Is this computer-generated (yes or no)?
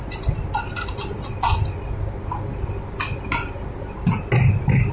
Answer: no